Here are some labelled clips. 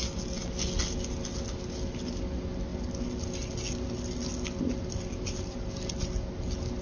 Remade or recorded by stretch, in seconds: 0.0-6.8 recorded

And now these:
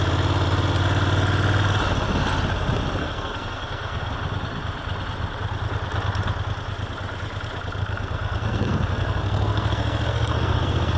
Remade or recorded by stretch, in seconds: 0.0-3.0 recorded; 3.0-4.1 remade; 4.1-7.8 recorded; 7.8-11.0 remade

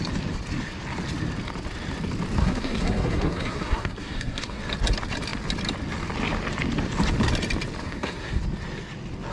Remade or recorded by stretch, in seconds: 0.0-2.4 recorded; 2.4-4.6 remade; 4.6-7.8 recorded; 7.8-8.4 remade; 8.4-9.3 recorded

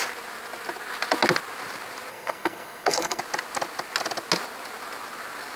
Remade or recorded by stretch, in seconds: 0.0-2.1 recorded; 2.1-3.2 remade; 3.2-5.6 recorded

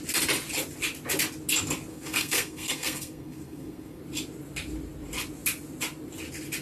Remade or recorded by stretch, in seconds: 0.0-1.9 recorded; 1.9-4.0 remade; 4.0-6.6 recorded

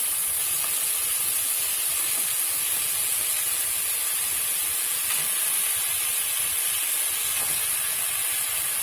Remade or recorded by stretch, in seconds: 0.0-8.8 recorded